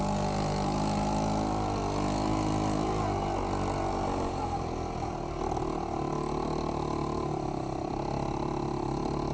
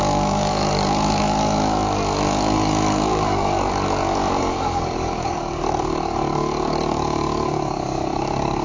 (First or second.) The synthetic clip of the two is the second